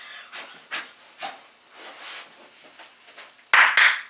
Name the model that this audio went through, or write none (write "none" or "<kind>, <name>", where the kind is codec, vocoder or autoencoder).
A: none